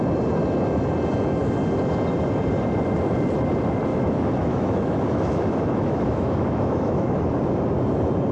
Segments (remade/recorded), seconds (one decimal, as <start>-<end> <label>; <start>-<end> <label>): 0.0-3.9 recorded; 3.9-7.2 remade; 7.2-8.3 recorded